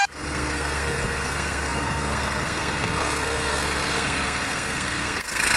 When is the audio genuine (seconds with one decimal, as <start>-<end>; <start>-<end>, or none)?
none